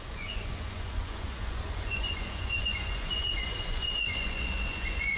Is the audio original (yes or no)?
no